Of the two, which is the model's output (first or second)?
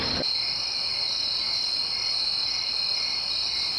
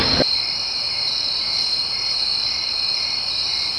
second